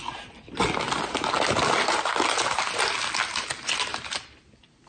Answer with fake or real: real